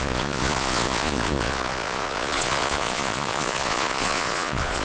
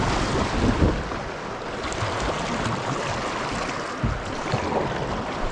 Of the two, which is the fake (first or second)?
first